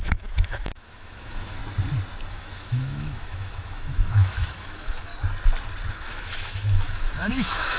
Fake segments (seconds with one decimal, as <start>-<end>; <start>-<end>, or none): 0.0-1.6; 2.3-5.1; 5.9-7.8